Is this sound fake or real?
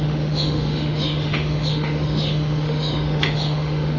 fake